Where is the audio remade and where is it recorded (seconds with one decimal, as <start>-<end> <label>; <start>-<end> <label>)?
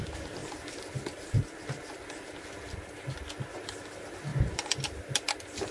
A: 0.0-5.7 recorded